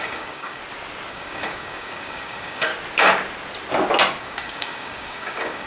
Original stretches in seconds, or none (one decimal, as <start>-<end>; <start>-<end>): 0.6-1.1; 2.7-4.2